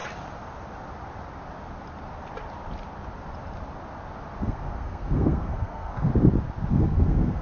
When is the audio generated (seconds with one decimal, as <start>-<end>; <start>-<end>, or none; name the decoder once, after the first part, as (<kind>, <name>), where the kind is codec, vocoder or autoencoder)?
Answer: 4.4-6.1 (codec, SNAC); 6.7-7.4